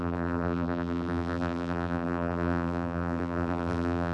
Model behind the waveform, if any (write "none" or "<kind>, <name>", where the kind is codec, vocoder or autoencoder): vocoder, BigVGAN v2